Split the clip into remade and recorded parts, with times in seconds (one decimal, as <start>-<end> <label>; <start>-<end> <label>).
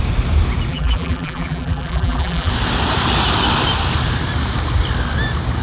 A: 0.0-0.7 recorded; 0.7-2.5 remade; 2.5-5.6 recorded